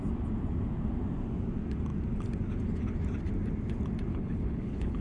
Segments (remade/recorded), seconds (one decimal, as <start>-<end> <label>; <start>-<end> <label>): 0.0-4.1 recorded; 4.1-5.0 remade